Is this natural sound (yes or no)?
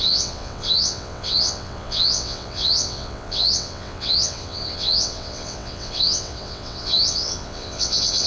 no